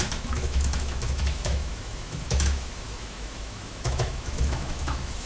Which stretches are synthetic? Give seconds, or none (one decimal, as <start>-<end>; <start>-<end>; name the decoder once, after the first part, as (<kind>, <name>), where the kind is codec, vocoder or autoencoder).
0.0-5.3 (autoencoder, DAC-VAE)